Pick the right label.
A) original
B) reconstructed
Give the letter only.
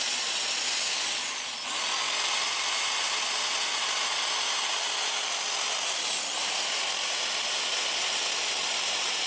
A